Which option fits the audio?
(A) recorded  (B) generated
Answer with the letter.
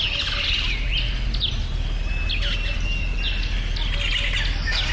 A